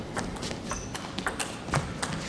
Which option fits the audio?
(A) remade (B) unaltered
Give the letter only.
B